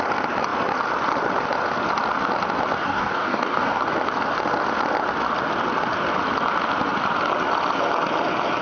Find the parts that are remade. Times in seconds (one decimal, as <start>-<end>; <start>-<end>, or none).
2.8-3.8